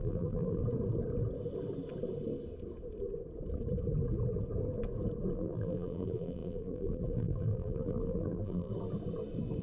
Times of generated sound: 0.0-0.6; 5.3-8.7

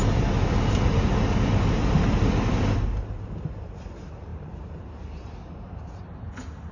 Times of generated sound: 4.3-6.3

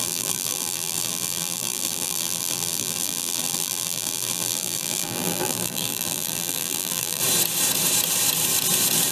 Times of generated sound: 0.0-7.2

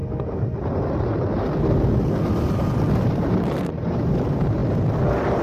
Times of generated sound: 3.2-4.6